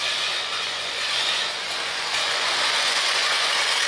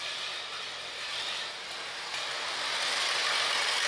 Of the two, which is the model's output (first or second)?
first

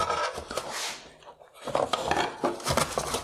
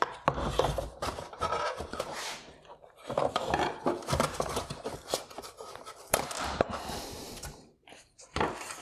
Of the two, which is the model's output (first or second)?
second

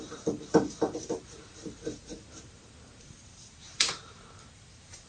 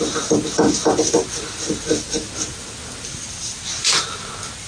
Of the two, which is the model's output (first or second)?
first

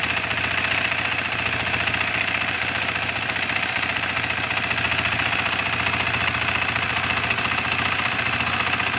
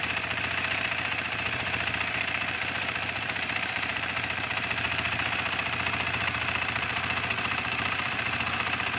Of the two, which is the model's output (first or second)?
second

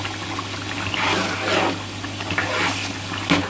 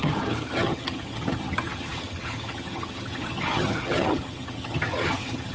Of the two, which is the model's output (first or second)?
second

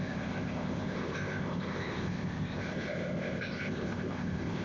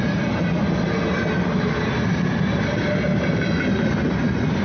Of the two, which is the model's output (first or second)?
first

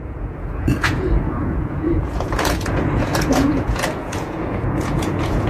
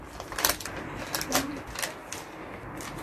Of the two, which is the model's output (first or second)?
first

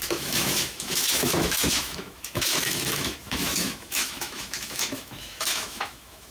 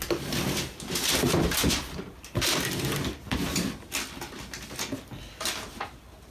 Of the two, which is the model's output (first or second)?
first